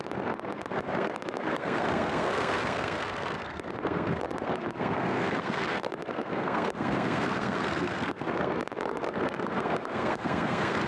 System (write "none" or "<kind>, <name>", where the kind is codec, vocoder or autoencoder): codec, SNAC